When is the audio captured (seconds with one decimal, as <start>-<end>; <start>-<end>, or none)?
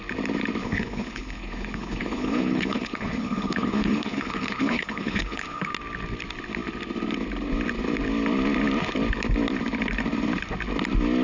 0.0-0.6; 5.7-11.2